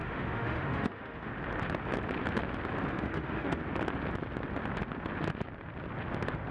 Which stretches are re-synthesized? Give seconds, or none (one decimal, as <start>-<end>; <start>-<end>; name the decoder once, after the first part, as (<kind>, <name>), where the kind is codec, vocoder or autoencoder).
0.0-1.3 (autoencoder, DAC-VAE); 2.9-3.6